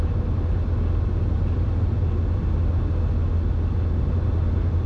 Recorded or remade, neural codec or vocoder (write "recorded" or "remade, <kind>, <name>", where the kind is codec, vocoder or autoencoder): recorded